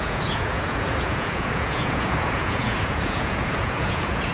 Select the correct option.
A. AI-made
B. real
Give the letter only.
A